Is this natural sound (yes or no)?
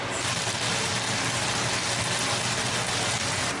yes